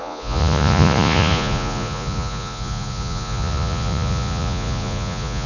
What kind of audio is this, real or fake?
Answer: fake